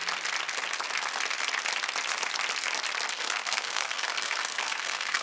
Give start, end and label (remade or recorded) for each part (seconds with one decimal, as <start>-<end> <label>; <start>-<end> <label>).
0.0-3.1 recorded; 3.1-5.2 remade